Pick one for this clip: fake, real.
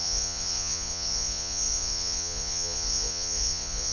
fake